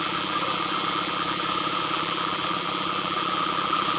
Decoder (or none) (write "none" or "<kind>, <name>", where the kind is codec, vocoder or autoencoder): vocoder, BigVGAN v2